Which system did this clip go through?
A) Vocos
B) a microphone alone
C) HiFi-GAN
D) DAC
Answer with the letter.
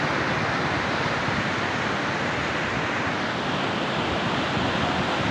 B